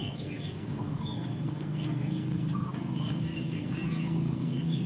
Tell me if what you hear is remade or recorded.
remade